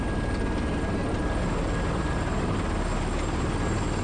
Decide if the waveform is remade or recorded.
recorded